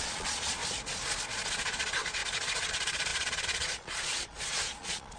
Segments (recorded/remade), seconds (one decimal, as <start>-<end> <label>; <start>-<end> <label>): 0.0-0.6 remade; 0.6-1.5 recorded; 1.5-2.2 remade; 2.2-2.7 recorded; 2.7-5.2 remade